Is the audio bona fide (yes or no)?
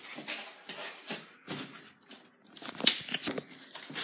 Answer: yes